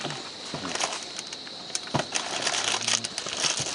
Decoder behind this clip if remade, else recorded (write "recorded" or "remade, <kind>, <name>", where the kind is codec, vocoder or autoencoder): recorded